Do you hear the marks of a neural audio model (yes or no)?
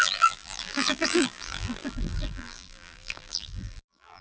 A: yes